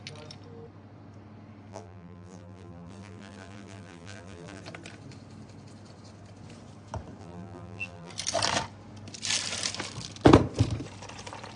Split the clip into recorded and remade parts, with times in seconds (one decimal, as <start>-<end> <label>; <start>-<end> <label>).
0.0-1.7 recorded; 1.7-4.6 remade; 4.6-7.2 recorded; 7.2-8.1 remade; 8.1-11.6 recorded